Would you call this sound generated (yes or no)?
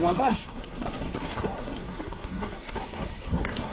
yes